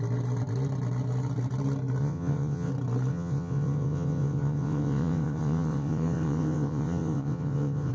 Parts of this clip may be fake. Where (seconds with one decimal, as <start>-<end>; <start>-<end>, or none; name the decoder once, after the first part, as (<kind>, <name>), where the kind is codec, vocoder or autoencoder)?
2.0-2.7 (vocoder, WaveNeXt); 3.1-7.9